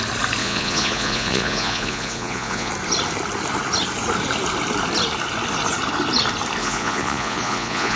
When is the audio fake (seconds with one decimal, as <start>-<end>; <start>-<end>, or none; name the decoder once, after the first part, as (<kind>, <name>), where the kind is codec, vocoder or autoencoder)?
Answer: 0.4-2.7 (vocoder, Vocos); 6.6-8.0